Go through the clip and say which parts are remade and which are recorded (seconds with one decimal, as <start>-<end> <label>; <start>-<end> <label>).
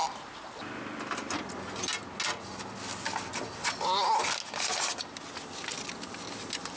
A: 0.0-6.8 recorded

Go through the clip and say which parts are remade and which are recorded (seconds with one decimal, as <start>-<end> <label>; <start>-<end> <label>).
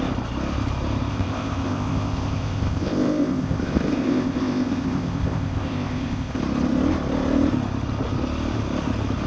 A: 0.0-1.1 recorded; 1.1-6.4 remade; 6.4-9.3 recorded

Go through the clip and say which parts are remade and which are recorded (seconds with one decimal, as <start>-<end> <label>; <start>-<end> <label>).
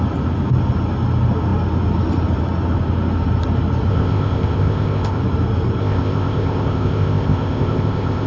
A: 0.0-3.9 recorded; 3.9-5.2 remade; 5.2-5.8 recorded; 5.8-8.3 remade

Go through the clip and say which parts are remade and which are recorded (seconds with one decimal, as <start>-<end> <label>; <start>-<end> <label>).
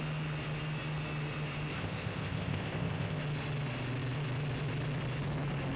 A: 0.0-1.7 recorded; 1.7-3.2 remade; 3.2-5.8 recorded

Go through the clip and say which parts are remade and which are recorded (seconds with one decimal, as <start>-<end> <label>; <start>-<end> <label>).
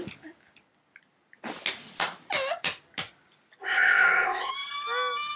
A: 0.0-3.6 recorded; 3.6-4.5 remade; 4.5-5.4 recorded